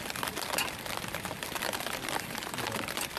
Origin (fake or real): real